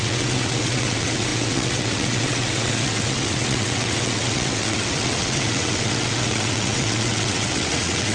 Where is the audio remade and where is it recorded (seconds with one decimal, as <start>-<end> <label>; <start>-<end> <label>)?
0.0-8.1 remade